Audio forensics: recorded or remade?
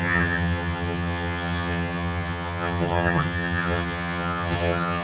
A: remade